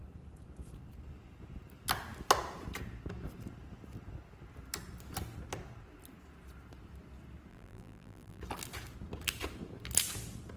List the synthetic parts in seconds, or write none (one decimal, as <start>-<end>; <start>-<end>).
7.5-8.4